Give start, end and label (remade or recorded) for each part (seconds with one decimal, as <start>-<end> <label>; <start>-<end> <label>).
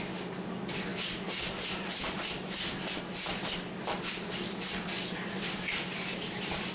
0.0-6.7 recorded